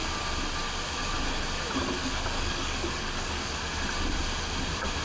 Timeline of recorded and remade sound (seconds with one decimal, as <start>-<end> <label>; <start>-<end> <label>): 0.0-2.0 recorded; 2.0-3.5 remade; 3.5-5.0 recorded